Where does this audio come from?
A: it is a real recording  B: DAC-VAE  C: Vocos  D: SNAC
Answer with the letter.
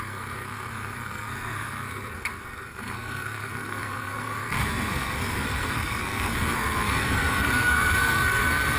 D